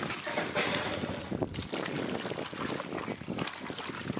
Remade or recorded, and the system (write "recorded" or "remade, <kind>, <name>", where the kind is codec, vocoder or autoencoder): recorded